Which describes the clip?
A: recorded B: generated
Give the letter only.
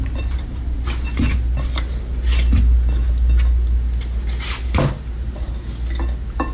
A